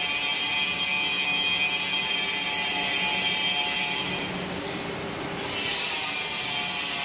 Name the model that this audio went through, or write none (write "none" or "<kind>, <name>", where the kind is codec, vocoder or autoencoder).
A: none